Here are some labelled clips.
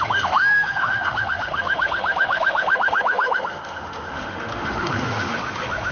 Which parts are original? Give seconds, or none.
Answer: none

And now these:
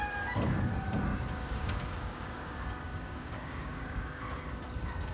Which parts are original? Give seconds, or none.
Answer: 0.0-1.1; 4.2-5.1

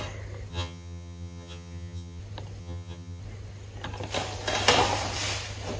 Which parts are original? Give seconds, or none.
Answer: 0.0-0.5; 2.2-2.6; 3.2-5.8

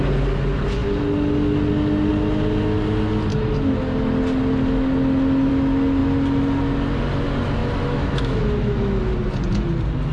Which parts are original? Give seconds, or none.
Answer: 0.0-7.6; 9.0-10.1

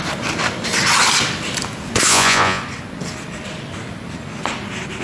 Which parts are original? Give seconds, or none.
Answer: 0.0-2.1; 2.6-5.0

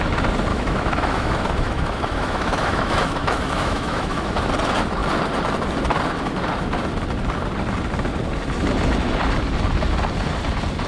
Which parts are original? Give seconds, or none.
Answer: 0.0-0.5; 4.5-10.9

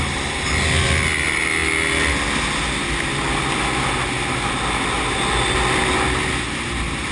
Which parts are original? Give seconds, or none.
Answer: 0.0-7.1

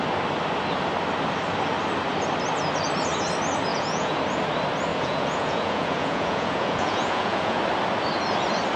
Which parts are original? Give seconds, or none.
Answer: 0.0-3.7; 4.2-4.9; 7.6-8.8